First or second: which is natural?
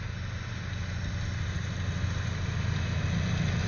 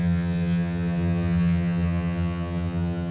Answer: first